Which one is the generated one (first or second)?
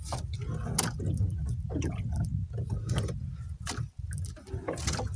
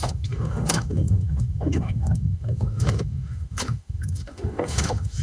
second